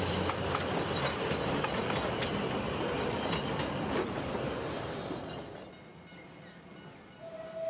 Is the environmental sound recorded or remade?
recorded